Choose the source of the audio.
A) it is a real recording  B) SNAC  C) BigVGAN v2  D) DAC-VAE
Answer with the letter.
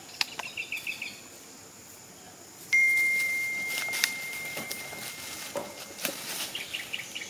C